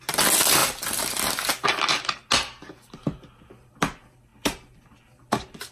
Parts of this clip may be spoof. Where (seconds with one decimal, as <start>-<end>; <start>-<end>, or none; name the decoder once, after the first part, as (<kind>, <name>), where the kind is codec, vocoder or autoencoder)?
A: none